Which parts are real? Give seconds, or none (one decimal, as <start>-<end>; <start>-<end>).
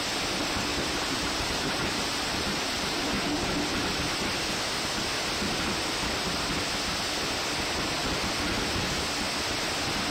0.0-0.7; 3.1-10.1